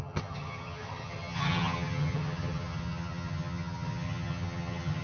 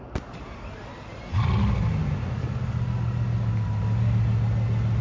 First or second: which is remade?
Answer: first